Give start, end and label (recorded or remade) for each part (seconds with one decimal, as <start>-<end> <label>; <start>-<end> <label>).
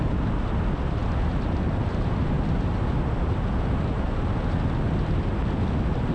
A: 0.0-6.1 recorded